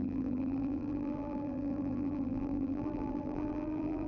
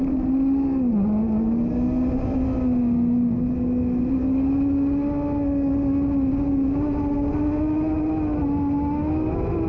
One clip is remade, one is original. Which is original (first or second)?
second